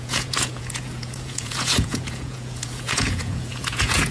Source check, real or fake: fake